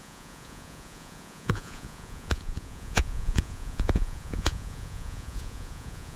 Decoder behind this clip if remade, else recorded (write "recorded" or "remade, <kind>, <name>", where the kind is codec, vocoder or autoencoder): remade, vocoder, Vocos